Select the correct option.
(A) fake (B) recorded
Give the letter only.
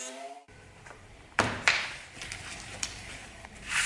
A